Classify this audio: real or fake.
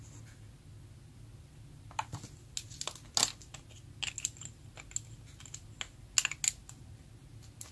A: real